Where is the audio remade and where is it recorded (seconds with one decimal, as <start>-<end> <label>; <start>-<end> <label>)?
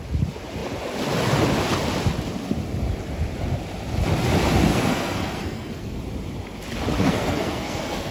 0.0-4.7 recorded; 4.7-6.0 remade; 6.0-7.0 recorded; 7.0-8.1 remade